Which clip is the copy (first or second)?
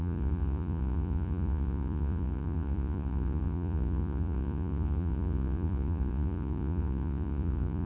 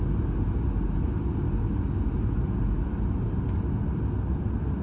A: first